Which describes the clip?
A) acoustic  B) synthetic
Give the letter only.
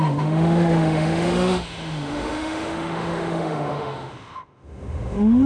B